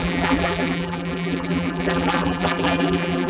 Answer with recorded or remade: remade